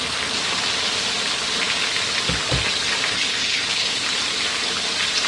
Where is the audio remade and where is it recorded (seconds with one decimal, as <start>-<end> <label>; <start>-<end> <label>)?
0.0-3.1 recorded; 3.1-3.9 remade; 3.9-5.3 recorded